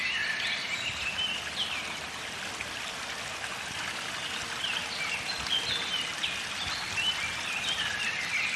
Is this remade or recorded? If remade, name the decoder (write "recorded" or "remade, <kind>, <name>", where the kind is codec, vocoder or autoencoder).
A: recorded